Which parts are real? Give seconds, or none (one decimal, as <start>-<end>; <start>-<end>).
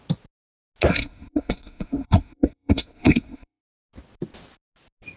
0.0-0.9; 3.6-5.2